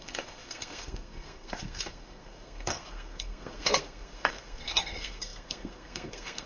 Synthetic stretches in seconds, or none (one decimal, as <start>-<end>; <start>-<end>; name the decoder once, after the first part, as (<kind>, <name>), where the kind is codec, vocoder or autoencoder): 0.0-6.5 (codec, SNAC)